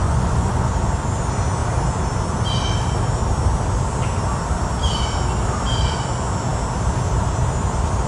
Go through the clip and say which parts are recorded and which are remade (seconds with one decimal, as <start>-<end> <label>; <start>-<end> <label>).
0.0-0.7 remade; 0.7-8.1 recorded